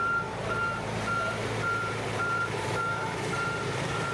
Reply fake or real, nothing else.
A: fake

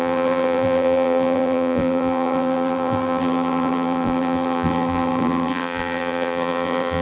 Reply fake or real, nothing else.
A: fake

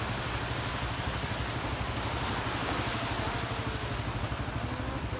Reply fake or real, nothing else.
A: real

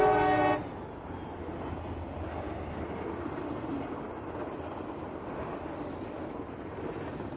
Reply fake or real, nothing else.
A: real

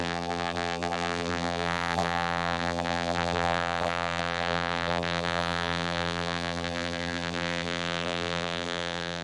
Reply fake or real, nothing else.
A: fake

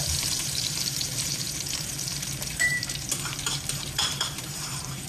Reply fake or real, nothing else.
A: fake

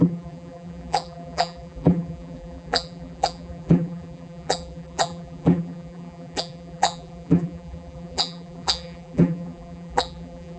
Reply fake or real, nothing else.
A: fake